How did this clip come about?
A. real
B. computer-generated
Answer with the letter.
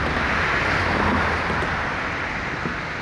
A